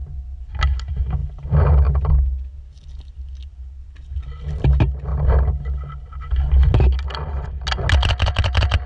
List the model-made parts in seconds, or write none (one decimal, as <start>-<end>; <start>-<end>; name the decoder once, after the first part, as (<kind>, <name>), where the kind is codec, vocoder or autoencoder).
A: none

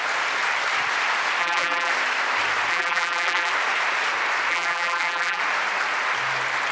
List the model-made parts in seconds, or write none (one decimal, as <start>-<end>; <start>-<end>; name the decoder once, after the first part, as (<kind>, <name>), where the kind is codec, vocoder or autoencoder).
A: 1.4-1.9 (vocoder, BigVGAN v2); 2.7-3.5; 4.5-5.4

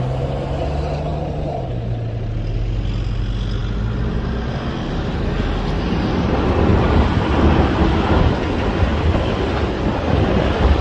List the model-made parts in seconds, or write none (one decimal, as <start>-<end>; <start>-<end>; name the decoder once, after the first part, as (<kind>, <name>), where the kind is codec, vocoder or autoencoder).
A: 1.1-1.8 (vocoder, BigVGAN v2)

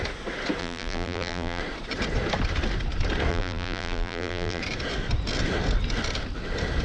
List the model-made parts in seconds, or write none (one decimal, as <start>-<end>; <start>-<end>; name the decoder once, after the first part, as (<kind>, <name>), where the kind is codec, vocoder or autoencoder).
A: 0.6-1.6 (vocoder, BigVGAN v2); 3.3-4.6

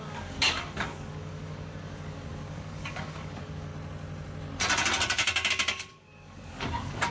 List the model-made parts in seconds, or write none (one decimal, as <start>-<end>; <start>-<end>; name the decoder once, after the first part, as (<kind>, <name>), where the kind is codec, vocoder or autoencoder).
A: 0.0-3.7 (codec, DAC); 5.5-7.1

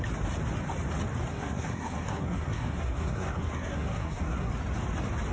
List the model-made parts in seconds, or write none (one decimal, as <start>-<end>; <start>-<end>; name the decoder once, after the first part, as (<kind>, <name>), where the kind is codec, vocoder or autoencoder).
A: 1.3-4.5 (codec, SNAC)

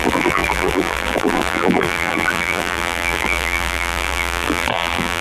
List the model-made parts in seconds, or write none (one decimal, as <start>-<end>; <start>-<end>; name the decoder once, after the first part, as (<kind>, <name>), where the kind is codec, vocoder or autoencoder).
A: 0.0-5.2 (vocoder, BigVGAN v2)

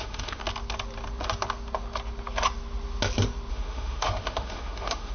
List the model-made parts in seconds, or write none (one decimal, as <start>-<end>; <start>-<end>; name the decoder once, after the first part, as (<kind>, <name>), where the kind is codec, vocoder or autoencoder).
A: 0.0-0.4 (autoencoder, DAC-VAE); 3.5-5.1